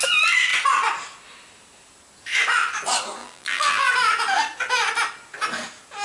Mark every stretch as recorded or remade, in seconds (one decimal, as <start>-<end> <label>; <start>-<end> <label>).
0.0-3.2 recorded; 3.2-3.9 remade; 3.9-6.0 recorded